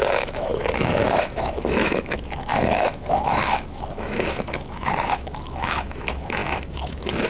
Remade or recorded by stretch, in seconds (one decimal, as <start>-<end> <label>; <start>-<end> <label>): 0.0-7.3 remade